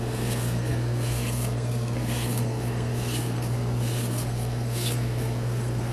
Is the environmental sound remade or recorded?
remade